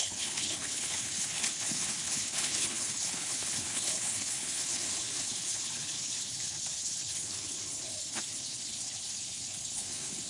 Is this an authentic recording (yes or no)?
no